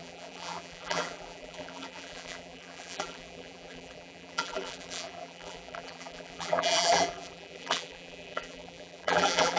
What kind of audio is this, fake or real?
fake